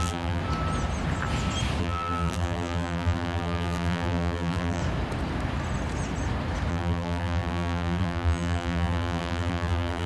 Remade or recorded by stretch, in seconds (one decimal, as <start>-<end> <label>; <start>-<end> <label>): 0.0-0.4 remade; 0.4-1.8 recorded; 1.8-4.8 remade; 4.8-6.7 recorded; 6.7-10.1 remade